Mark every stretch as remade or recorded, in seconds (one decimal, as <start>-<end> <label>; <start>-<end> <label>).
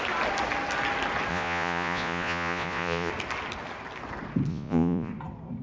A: 0.0-1.3 recorded; 1.3-3.1 remade; 3.1-4.5 recorded; 4.5-5.1 remade; 5.1-5.6 recorded